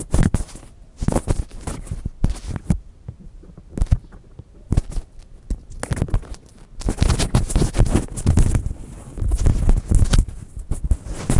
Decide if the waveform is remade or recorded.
recorded